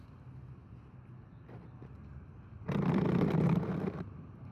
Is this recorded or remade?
recorded